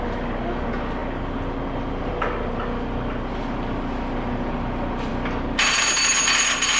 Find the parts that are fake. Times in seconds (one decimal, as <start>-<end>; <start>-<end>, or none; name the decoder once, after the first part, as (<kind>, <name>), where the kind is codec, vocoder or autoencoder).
none